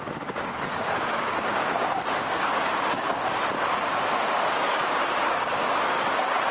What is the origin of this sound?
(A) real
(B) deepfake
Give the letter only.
B